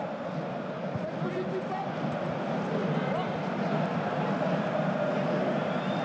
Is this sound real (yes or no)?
yes